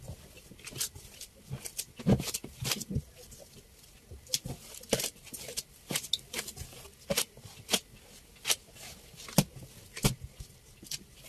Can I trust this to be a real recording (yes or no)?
yes